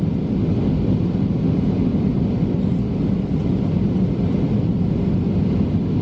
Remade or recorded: recorded